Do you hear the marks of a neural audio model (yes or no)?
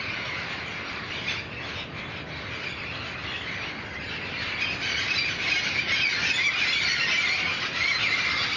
no